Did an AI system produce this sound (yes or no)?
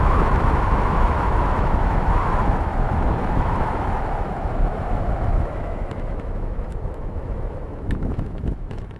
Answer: yes